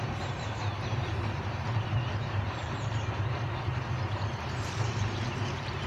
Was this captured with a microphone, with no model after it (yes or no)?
no